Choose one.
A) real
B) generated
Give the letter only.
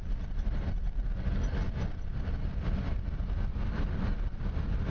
A